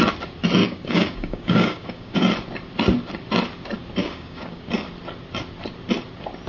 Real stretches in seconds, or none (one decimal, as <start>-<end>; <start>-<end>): 0.0-0.6; 2.2-4.0; 4.7-6.5